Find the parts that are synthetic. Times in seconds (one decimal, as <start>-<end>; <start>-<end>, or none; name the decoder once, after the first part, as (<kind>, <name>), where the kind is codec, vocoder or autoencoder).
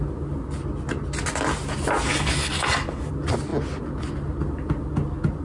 2.1-3.1 (codec, DAC)